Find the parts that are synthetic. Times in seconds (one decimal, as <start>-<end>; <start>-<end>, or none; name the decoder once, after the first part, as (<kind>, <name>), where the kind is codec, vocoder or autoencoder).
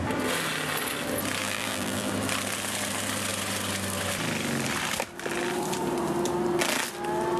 1.4-2.1 (vocoder, BigVGAN v2)